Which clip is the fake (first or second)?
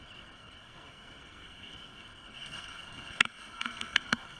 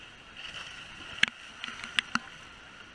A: first